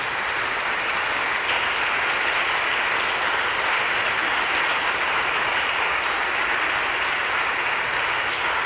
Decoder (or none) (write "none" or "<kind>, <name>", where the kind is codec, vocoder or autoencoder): none